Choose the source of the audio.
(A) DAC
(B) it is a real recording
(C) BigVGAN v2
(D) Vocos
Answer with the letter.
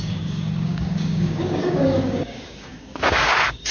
A